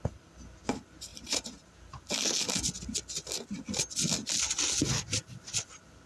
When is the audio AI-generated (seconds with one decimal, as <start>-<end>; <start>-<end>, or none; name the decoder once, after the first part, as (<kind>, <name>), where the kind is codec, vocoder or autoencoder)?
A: 1.1-2.1 (vocoder, BigVGAN v2)